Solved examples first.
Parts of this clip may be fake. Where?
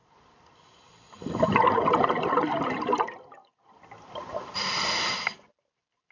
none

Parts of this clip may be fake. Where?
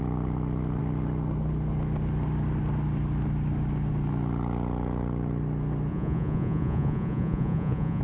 5.9-8.0 (vocoder, Vocos)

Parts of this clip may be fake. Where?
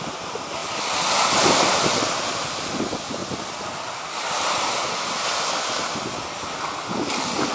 none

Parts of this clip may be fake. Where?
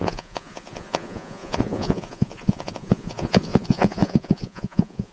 0.0-5.1 (vocoder, Vocos)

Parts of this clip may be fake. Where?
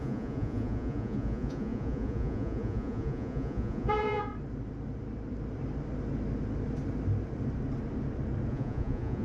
0.0-4.3 (vocoder, Vocos); 8.5-9.2